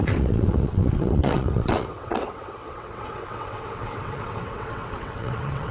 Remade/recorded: remade